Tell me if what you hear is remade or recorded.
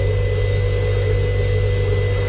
recorded